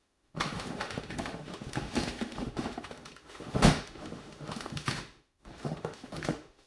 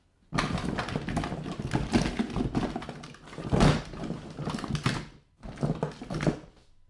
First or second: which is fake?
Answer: first